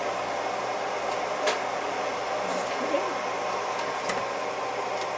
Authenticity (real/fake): real